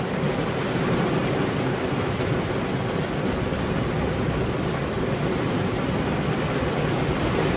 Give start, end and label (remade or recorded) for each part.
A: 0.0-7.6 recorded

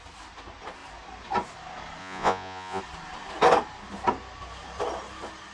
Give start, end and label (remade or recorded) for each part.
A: 0.0-2.0 recorded; 2.0-2.8 remade; 2.8-5.5 recorded